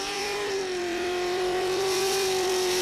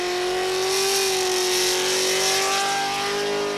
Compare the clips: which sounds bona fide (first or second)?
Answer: second